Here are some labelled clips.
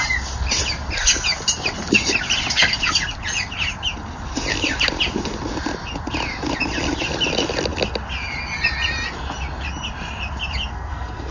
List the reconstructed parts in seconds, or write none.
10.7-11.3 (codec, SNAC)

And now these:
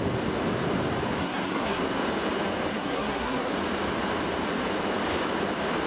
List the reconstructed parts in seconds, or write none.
1.2-1.8 (codec, SNAC); 2.7-3.5

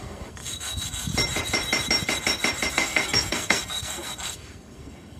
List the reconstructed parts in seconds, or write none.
0.0-1.1 (codec, SNAC); 2.7-5.2

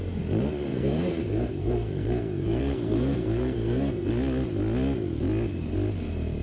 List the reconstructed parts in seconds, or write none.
0.7-4.1 (codec, SNAC)

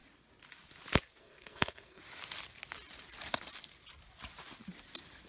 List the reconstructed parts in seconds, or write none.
1.2-2.0 (codec, SNAC)

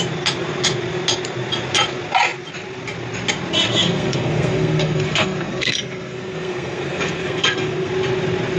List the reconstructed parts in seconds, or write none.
3.7-7.9 (codec, SNAC)

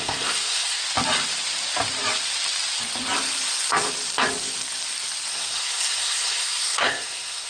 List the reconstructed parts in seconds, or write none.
0.0-0.8 (codec, SNAC); 5.3-7.5

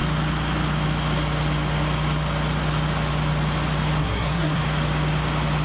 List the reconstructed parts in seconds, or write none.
4.0-4.6 (codec, SNAC)